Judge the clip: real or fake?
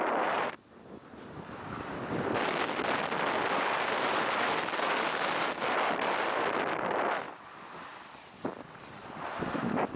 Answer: real